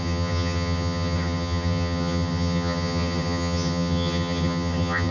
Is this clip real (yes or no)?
no